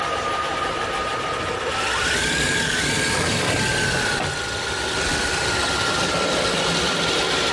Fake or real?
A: real